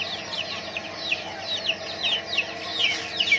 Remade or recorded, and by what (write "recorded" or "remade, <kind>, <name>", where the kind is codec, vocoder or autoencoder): recorded